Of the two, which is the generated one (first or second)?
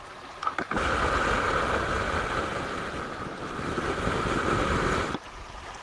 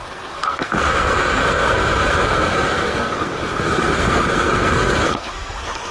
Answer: second